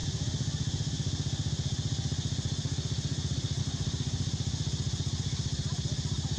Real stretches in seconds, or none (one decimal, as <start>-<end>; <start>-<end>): 0.0-6.4